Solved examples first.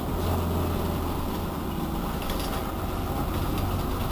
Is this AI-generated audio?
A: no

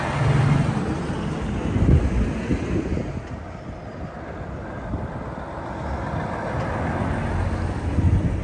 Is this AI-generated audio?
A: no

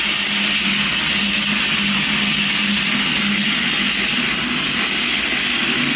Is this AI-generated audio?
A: no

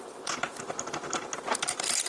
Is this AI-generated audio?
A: no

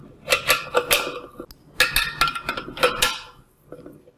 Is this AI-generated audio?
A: no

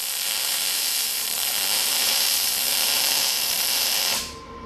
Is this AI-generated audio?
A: yes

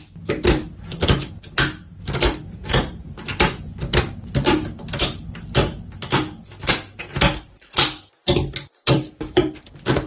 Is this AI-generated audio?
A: no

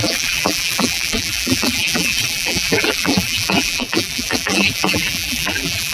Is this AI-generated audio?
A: yes